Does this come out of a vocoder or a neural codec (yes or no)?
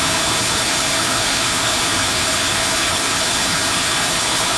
yes